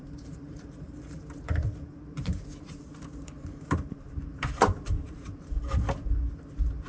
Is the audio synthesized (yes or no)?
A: yes